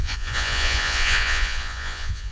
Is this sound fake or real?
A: fake